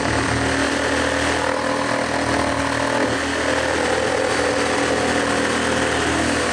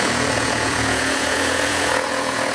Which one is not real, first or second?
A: second